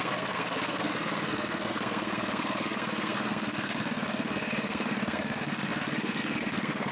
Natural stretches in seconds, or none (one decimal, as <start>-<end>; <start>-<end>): none